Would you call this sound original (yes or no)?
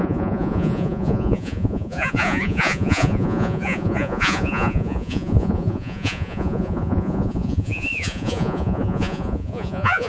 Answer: no